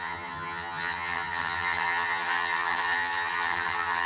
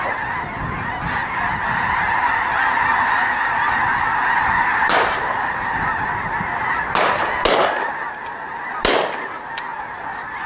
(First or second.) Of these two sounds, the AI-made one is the first